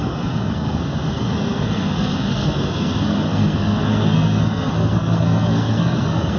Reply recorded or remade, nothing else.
remade